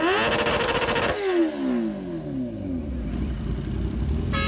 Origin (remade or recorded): recorded